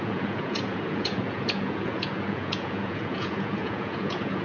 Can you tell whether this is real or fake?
fake